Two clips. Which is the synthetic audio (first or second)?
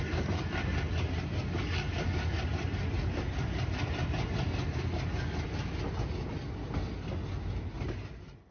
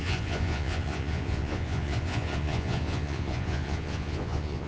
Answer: second